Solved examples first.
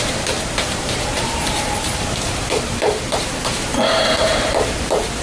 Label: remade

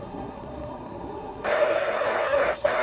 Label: remade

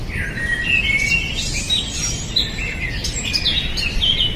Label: recorded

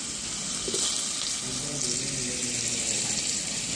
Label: recorded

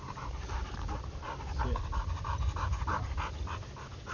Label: recorded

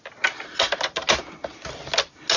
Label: recorded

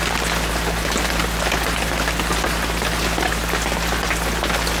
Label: recorded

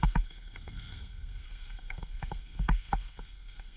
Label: remade